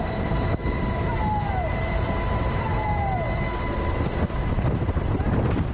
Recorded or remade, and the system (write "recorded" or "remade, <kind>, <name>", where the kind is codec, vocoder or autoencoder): recorded